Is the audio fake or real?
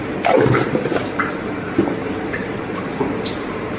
fake